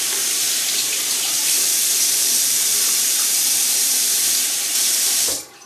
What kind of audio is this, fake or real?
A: fake